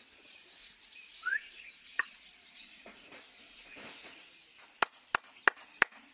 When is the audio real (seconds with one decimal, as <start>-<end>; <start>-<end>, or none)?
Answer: 0.0-0.6; 4.3-6.1